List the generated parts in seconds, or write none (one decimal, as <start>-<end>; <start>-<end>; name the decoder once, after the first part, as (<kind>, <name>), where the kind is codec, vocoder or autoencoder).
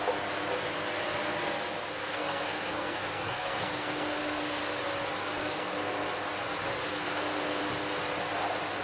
2.0-4.6 (codec, SNAC); 5.4-5.9; 6.9-7.6